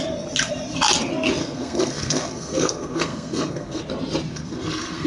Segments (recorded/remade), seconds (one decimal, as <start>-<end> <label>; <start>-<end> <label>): 0.0-1.4 recorded; 1.4-3.8 remade; 3.8-4.3 recorded; 4.3-5.1 remade